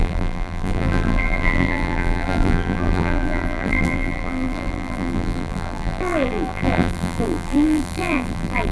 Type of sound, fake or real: fake